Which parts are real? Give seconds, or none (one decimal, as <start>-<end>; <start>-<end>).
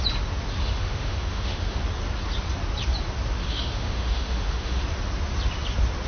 0.0-0.6; 1.8-3.4; 4.8-6.1